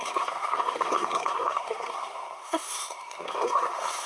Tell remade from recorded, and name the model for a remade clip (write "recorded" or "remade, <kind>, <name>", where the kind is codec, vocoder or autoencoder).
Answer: remade, codec, SNAC